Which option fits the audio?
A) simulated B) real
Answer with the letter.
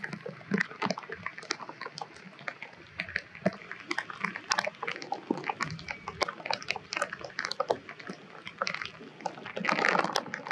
B